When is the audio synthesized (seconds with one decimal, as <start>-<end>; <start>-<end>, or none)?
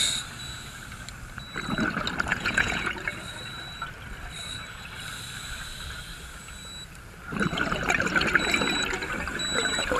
2.3-2.9